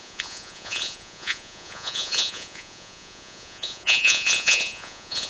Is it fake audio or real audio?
fake